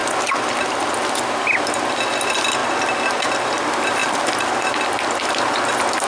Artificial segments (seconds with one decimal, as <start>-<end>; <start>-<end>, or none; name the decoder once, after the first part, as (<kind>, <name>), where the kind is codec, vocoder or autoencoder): 0.0-0.9 (vocoder, BigVGAN v2)

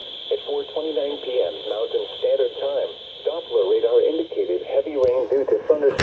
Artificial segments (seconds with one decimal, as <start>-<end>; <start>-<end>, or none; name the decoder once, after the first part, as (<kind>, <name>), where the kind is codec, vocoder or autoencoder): none

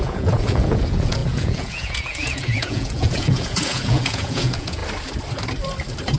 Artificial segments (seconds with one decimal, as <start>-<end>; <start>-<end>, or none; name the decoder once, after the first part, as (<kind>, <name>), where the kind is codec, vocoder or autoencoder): 0.0-4.8 (vocoder, Vocos)